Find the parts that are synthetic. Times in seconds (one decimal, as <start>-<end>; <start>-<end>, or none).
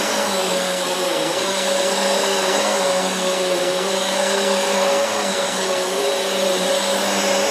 0.0-6.0